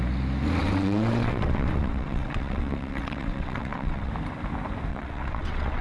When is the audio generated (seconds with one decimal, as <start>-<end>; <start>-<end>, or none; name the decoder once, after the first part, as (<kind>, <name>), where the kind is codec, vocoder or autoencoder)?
0.6-4.1 (vocoder, WaveNeXt); 4.9-5.8